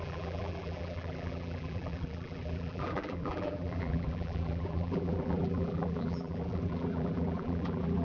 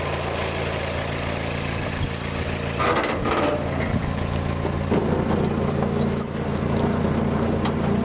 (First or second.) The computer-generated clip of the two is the first